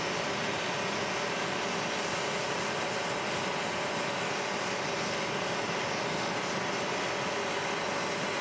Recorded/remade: recorded